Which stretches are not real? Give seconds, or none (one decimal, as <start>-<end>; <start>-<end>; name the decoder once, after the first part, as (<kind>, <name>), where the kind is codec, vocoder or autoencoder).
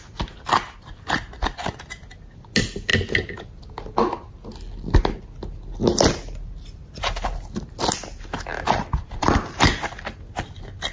none